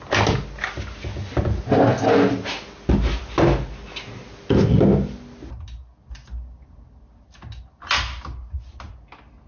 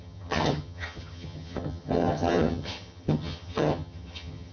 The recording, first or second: first